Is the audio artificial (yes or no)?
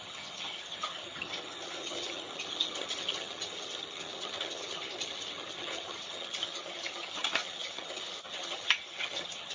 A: yes